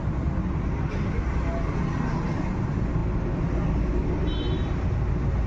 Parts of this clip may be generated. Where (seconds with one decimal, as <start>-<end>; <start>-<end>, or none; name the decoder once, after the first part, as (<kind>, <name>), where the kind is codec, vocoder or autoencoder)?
none